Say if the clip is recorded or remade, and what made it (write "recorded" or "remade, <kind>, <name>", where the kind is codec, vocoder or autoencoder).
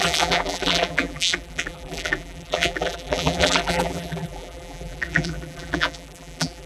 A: remade, vocoder, BigVGAN v2